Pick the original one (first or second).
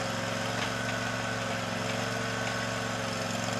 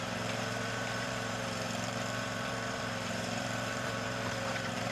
first